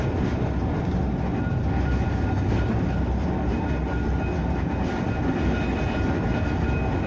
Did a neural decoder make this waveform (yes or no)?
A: no